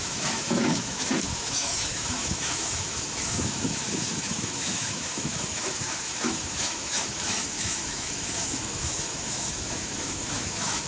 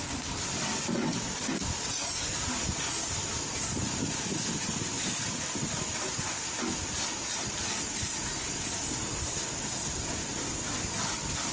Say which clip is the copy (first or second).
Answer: first